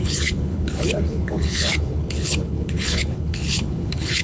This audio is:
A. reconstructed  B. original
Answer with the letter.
A